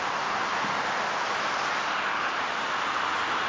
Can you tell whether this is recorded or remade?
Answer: recorded